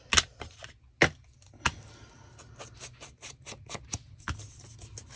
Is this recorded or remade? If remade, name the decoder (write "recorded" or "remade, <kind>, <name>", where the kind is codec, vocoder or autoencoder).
recorded